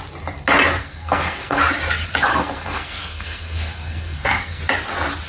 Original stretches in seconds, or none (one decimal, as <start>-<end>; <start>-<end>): 0.0-0.8; 1.6-2.3; 4.6-5.3